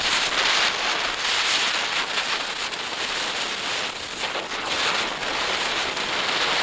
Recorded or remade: recorded